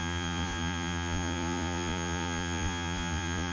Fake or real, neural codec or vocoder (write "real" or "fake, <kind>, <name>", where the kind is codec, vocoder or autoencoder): fake, vocoder, Vocos